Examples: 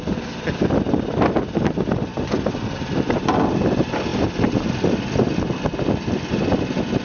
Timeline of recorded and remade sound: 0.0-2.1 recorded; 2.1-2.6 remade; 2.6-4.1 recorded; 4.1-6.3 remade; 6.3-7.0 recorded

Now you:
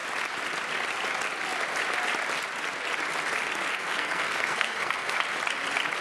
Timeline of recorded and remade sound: 0.0-3.7 recorded; 3.7-5.2 remade; 5.2-6.0 recorded